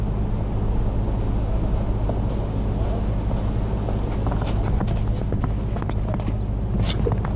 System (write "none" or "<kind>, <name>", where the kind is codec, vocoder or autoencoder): none